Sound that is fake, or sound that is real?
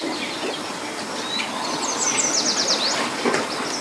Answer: real